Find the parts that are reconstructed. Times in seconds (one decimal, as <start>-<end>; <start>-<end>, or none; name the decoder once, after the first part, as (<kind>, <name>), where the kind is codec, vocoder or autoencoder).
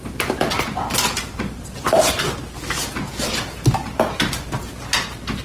none